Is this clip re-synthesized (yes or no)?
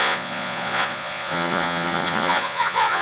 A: yes